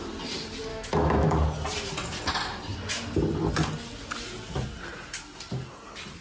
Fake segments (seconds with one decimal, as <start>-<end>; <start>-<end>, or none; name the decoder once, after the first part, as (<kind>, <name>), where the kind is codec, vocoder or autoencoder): 0.7-1.3 (autoencoder, DAC-VAE)